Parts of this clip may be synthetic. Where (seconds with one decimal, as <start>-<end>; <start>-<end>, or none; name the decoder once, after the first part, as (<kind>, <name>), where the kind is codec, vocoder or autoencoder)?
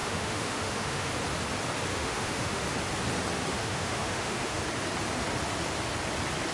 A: 0.0-1.1 (autoencoder, DAC-VAE); 1.9-2.6; 3.5-4.6